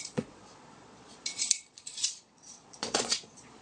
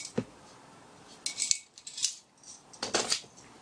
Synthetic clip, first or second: first